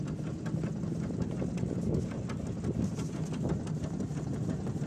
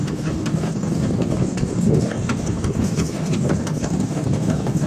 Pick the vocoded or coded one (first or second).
second